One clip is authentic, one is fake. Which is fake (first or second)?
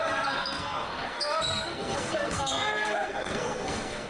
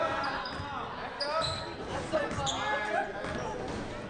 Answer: first